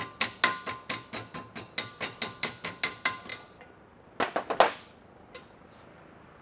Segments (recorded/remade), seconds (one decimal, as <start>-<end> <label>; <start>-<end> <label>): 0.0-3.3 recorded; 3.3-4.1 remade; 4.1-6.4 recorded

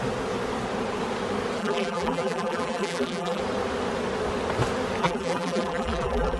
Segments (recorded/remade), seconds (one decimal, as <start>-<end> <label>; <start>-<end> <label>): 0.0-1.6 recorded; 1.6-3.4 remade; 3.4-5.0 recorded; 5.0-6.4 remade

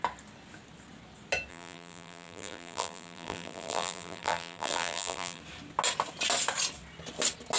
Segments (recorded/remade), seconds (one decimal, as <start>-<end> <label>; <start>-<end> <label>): 0.0-1.5 recorded; 1.5-5.4 remade; 5.4-7.6 recorded

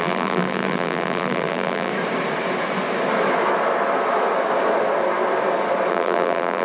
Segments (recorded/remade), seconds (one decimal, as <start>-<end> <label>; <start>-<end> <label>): 0.0-1.9 remade; 1.9-5.9 recorded; 5.9-6.6 remade

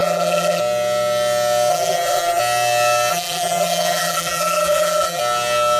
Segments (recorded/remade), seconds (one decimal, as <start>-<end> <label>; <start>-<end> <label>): 0.0-0.6 remade; 0.6-1.7 recorded; 1.7-2.4 remade; 2.4-3.1 recorded; 3.1-5.2 remade; 5.2-5.8 recorded

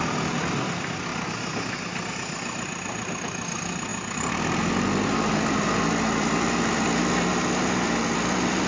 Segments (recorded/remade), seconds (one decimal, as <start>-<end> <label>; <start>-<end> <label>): 0.0-1.1 remade; 1.1-2.1 recorded; 2.1-8.7 remade

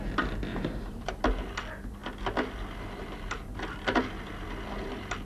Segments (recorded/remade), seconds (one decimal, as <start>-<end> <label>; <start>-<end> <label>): 0.0-0.5 recorded; 0.5-1.1 remade; 1.1-5.3 recorded